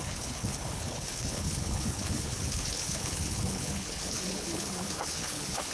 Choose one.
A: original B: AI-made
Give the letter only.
B